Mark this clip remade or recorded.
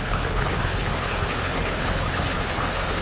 remade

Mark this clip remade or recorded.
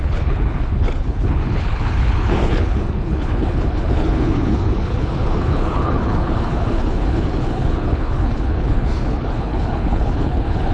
remade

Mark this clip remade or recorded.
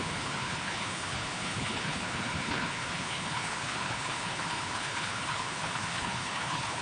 remade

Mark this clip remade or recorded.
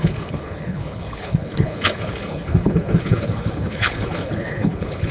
remade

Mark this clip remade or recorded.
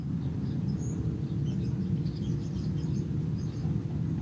recorded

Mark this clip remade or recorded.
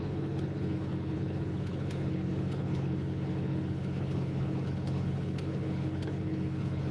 remade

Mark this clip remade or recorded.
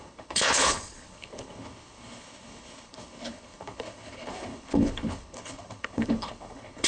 remade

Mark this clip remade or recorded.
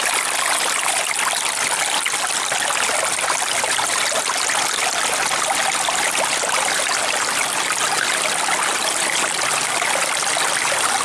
recorded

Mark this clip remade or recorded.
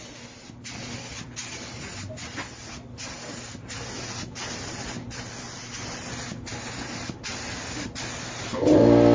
recorded